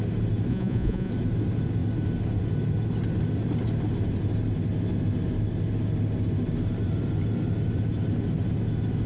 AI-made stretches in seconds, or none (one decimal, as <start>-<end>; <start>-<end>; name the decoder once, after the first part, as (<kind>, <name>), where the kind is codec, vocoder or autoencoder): 0.5-1.1 (vocoder, Vocos)